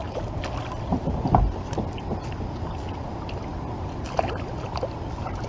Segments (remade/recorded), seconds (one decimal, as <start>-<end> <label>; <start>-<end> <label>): 0.0-0.9 recorded; 0.9-1.4 remade; 1.4-5.5 recorded